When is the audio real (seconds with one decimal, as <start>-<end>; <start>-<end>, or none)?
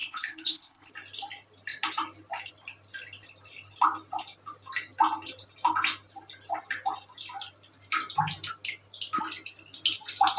0.9-10.4